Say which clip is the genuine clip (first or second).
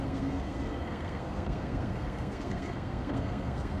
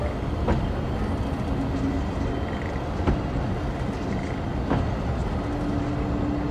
second